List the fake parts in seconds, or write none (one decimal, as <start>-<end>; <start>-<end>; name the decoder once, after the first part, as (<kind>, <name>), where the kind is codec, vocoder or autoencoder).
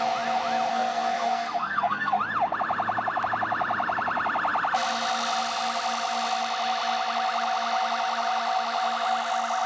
0.7-2.2 (codec, SNAC)